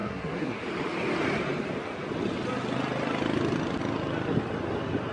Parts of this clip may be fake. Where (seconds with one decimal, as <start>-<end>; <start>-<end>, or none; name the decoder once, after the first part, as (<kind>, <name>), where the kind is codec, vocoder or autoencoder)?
0.0-0.6 (codec, SNAC)